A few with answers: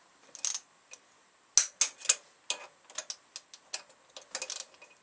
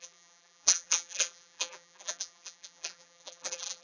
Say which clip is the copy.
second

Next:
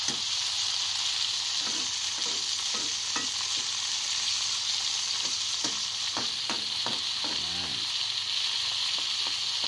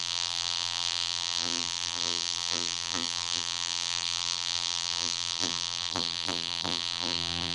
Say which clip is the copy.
second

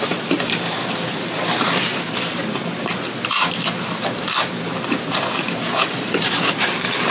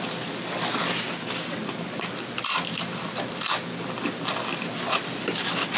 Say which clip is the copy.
first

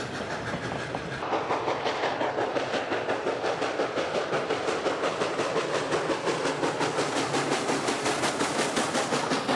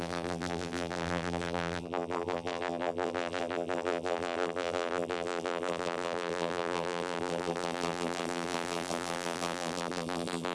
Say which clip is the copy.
second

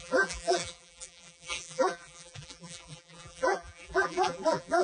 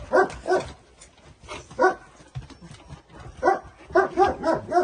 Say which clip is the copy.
first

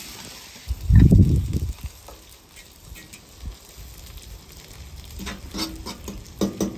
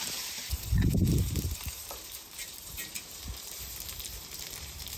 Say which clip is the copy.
second